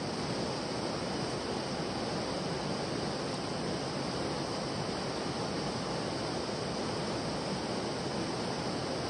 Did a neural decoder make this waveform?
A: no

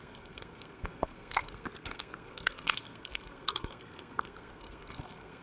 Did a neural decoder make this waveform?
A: yes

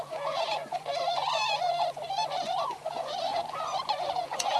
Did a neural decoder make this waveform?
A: yes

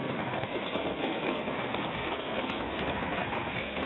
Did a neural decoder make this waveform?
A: yes